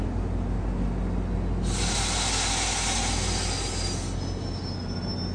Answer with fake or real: real